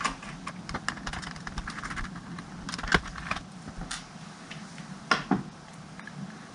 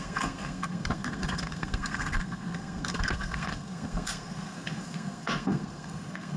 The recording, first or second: first